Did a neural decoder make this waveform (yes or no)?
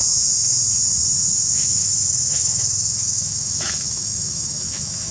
yes